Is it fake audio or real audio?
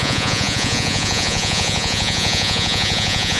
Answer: fake